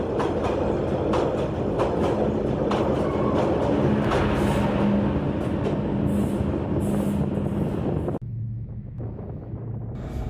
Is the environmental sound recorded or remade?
recorded